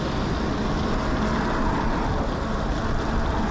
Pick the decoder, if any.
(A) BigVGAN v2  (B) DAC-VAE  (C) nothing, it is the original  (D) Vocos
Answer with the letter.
C